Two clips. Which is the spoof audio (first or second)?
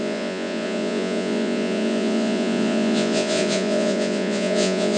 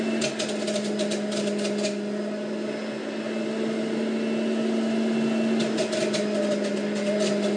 first